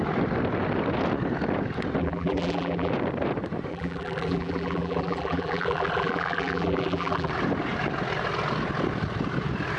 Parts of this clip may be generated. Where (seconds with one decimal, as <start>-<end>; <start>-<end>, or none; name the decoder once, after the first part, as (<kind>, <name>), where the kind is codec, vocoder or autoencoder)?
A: 2.0-2.9 (vocoder, BigVGAN v2); 3.7-7.3